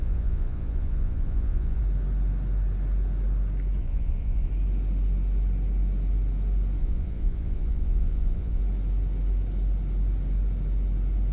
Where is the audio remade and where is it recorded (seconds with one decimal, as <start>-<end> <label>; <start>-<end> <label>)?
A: 0.0-1.8 remade; 1.8-3.8 recorded; 3.8-4.5 remade; 4.5-6.8 recorded; 6.8-8.6 remade; 8.6-11.3 recorded